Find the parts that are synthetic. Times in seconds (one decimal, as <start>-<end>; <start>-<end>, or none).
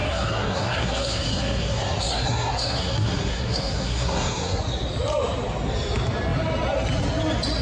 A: 0.0-4.6